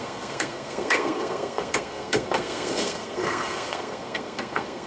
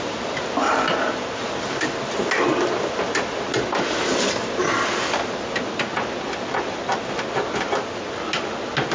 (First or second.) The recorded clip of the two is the second